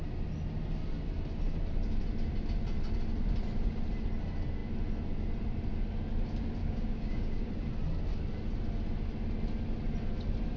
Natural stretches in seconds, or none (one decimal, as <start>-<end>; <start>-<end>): 0.0-6.6; 7.5-10.6